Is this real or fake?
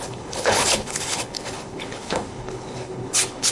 fake